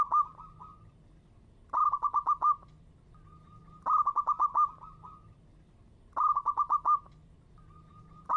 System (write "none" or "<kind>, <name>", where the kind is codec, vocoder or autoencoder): none